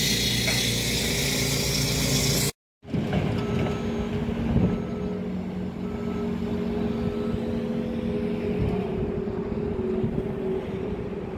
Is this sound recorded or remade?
recorded